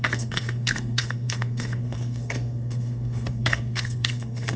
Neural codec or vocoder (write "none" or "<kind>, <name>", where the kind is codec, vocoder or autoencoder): codec, SNAC